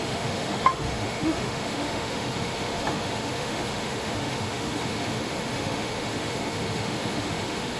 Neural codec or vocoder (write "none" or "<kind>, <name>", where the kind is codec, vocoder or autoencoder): autoencoder, DAC-VAE